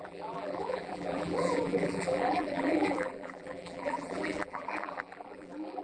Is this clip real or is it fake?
fake